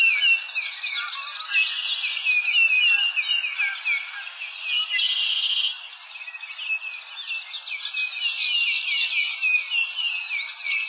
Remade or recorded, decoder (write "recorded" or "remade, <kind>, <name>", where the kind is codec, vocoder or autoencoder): recorded